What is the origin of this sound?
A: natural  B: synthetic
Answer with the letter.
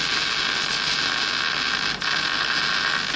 A